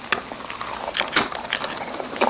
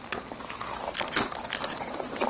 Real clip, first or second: first